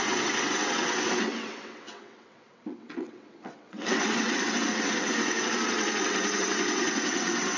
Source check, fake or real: fake